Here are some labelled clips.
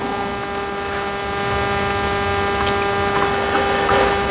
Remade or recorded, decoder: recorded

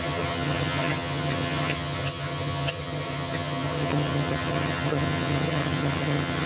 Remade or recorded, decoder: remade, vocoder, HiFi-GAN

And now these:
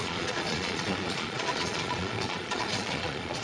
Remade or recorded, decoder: remade, vocoder, Vocos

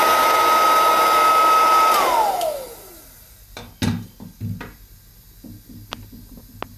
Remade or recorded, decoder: recorded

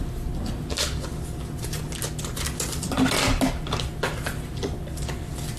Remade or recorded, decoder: recorded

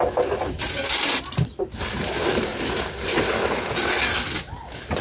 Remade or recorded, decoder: recorded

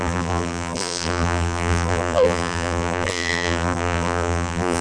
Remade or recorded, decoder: remade, vocoder, BigVGAN v2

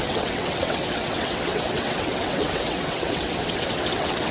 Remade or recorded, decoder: remade, vocoder, WaveNeXt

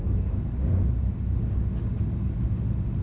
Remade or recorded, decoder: recorded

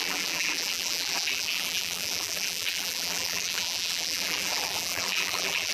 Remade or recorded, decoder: remade, vocoder, BigVGAN v2